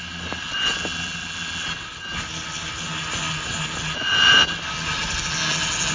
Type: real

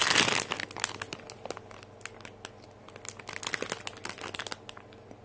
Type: real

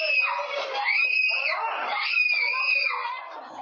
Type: real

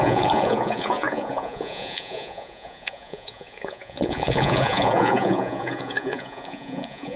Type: fake